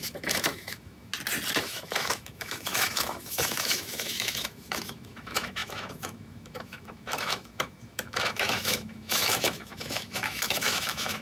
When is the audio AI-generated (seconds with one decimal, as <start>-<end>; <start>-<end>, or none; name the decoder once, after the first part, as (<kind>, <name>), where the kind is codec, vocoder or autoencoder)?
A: 0.0-1.1 (autoencoder, DAC-VAE); 1.6-11.2